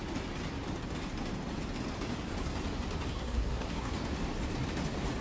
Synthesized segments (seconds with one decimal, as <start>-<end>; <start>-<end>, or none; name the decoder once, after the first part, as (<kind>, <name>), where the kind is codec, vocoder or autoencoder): 3.1-3.9 (codec, SNAC)